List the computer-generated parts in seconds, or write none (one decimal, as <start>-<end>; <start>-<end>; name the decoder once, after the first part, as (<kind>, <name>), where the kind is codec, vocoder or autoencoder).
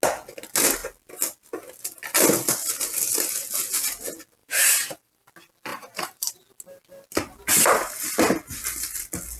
4.4-5.3 (vocoder, BigVGAN v2); 5.7-6.3